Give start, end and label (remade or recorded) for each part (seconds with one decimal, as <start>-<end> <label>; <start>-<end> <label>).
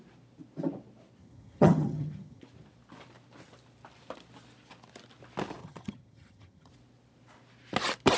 0.0-1.2 recorded; 1.2-2.4 remade; 2.4-5.6 recorded; 5.6-6.7 remade; 6.7-8.2 recorded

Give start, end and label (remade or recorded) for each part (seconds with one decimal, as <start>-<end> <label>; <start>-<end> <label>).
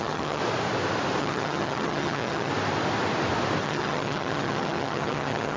0.0-0.4 remade; 0.4-1.2 recorded; 1.2-2.5 remade; 2.5-3.6 recorded; 3.6-5.6 remade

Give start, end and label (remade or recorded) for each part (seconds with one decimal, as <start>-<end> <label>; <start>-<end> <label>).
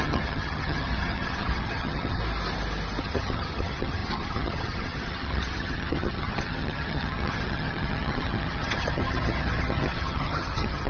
0.0-2.2 remade; 2.2-3.0 recorded; 3.0-10.9 remade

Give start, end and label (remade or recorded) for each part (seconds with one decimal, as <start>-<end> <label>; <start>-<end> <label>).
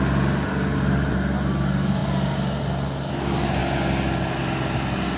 0.0-5.2 recorded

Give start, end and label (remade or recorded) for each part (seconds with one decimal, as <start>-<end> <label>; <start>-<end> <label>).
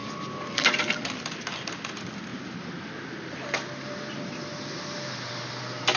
0.0-6.0 recorded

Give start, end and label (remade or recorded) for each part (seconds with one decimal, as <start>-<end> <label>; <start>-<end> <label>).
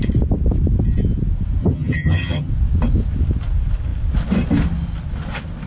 0.0-1.6 recorded; 1.6-2.5 remade; 2.5-5.7 recorded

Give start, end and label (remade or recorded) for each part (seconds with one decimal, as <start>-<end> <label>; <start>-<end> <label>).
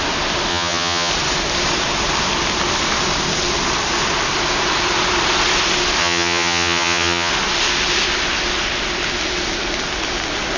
0.0-0.5 recorded; 0.5-1.1 remade; 1.1-6.0 recorded; 6.0-7.3 remade; 7.3-10.6 recorded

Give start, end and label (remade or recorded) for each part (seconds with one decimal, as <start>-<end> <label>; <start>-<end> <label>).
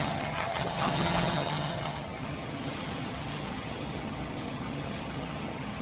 0.0-5.8 remade